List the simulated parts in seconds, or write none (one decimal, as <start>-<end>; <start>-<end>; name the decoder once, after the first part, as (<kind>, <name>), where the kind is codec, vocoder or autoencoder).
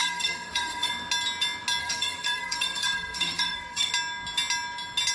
0.0-0.9 (codec, SNAC); 1.8-3.9